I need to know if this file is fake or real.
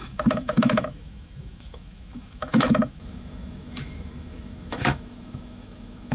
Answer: fake